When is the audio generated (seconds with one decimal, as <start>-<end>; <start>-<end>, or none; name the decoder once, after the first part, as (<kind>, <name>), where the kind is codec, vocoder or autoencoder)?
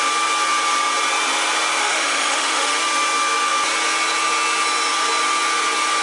1.8-2.8 (autoencoder, DAC-VAE)